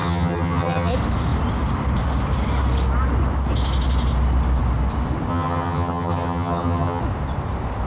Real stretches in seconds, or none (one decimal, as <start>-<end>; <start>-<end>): 0.9-5.3; 7.0-7.9